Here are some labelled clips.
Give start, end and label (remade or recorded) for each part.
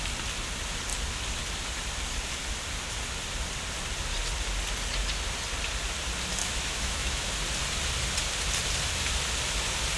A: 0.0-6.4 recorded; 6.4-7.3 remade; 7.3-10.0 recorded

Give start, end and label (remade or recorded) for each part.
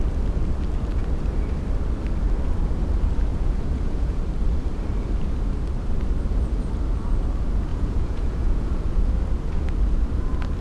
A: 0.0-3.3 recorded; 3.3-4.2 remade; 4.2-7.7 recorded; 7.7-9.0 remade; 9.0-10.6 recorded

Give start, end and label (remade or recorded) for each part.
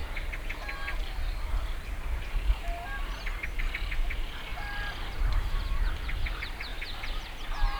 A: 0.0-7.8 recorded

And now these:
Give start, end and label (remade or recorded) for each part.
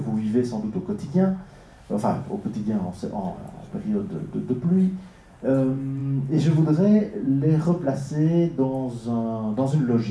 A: 0.0-10.1 recorded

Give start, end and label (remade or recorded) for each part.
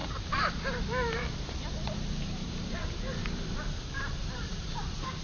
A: 0.0-5.2 remade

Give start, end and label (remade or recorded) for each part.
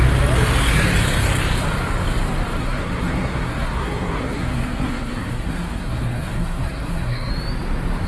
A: 0.0-2.6 recorded; 2.6-7.3 remade; 7.3-8.1 recorded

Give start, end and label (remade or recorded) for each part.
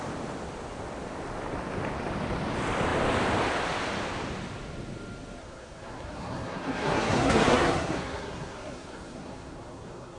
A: 0.0-5.4 recorded; 5.4-10.2 remade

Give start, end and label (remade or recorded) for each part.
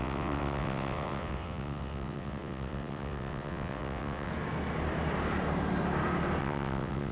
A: 0.0-4.3 remade; 4.3-6.4 recorded; 6.4-7.1 remade